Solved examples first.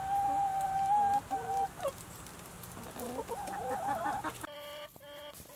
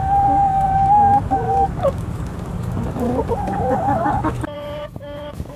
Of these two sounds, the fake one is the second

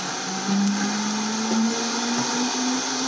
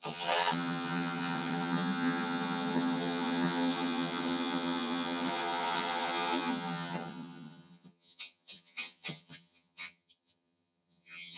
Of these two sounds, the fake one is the second